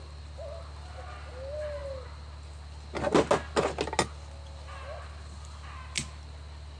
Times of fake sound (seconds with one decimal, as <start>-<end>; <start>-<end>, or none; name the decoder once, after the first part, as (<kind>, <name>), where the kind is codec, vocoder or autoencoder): none